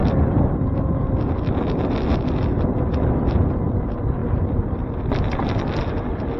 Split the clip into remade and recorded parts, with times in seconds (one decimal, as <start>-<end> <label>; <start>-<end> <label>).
0.0-4.2 recorded; 4.2-5.0 remade; 5.0-6.4 recorded